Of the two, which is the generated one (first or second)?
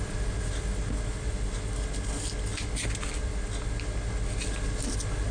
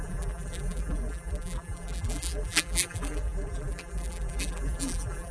second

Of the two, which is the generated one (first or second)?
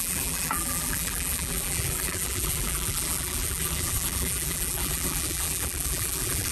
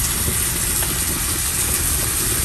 first